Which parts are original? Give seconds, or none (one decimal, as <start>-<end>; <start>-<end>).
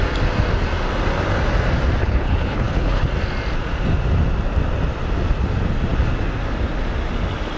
0.0-2.0; 3.1-7.6